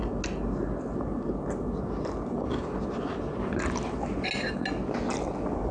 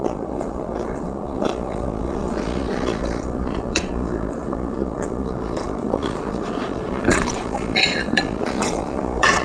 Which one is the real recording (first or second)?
first